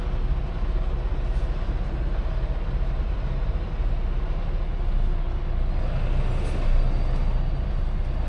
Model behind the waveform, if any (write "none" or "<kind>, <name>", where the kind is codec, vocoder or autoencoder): none